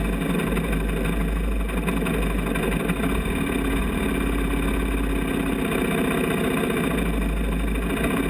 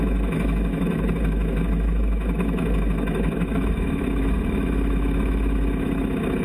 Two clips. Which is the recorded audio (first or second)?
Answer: first